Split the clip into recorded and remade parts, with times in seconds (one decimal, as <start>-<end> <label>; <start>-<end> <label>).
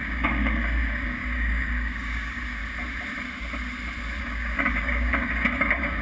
0.0-2.6 remade; 2.6-4.2 recorded; 4.2-6.0 remade